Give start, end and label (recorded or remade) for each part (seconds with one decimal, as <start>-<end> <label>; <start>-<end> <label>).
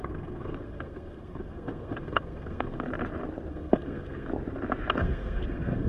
0.0-2.9 remade; 2.9-3.5 recorded; 3.5-4.3 remade; 4.3-5.0 recorded; 5.0-5.9 remade